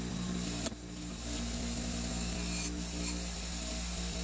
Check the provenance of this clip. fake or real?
real